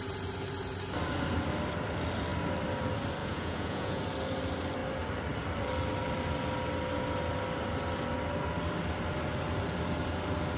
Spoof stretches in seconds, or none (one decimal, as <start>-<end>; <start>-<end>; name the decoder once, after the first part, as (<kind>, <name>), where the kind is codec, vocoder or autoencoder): 3.2-4.0 (vocoder, Vocos)